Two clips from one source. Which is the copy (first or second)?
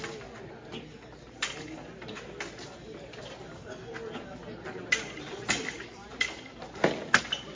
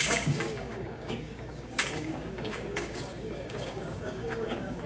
second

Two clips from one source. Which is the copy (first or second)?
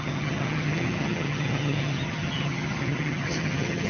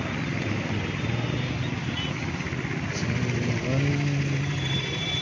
first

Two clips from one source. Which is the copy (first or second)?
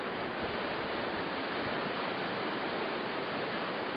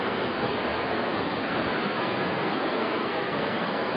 second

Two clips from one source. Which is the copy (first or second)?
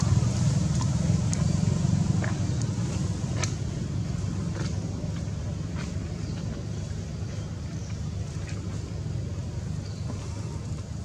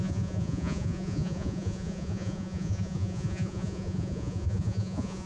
second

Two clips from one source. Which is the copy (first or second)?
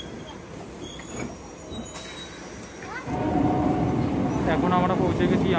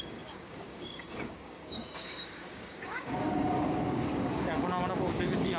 second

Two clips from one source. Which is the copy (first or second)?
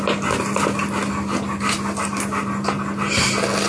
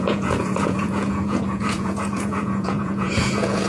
second